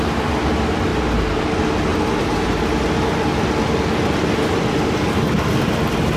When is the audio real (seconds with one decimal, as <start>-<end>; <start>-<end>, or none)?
0.0-6.2